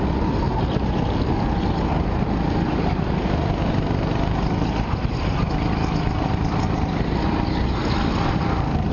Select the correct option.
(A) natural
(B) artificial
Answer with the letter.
A